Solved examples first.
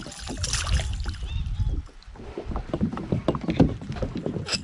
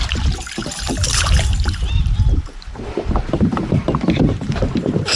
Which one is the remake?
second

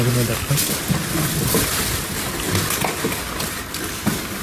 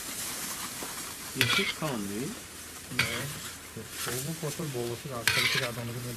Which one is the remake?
second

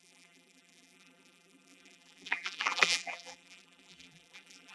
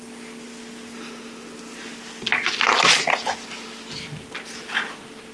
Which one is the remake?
first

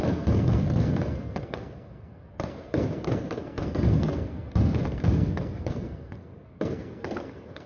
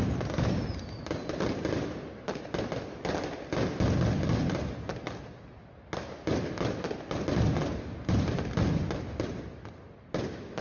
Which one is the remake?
first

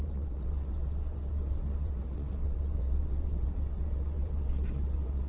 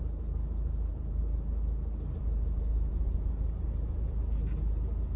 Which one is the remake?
first